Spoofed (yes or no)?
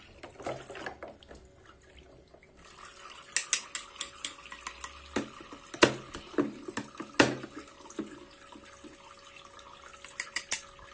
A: no